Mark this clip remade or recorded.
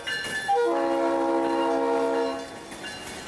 recorded